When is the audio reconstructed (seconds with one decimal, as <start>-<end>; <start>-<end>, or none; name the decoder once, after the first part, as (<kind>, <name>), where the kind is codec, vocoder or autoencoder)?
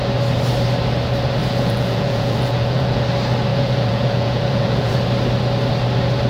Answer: 1.4-3.0 (vocoder, Vocos); 3.5-4.9